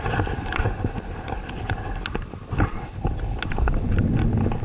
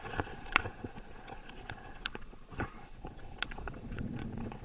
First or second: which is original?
first